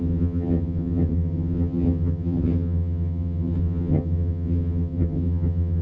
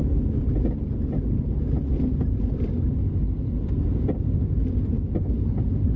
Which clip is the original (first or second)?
second